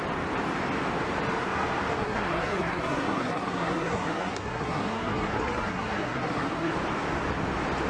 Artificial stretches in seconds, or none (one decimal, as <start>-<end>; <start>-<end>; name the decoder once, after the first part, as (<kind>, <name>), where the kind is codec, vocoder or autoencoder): 2.0-6.7 (codec, SNAC)